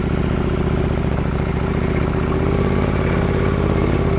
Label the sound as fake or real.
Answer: real